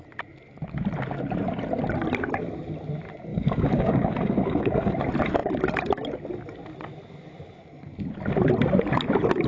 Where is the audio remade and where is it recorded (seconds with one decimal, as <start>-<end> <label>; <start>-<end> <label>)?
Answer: 0.0-3.3 recorded; 3.3-4.9 remade; 4.9-9.5 recorded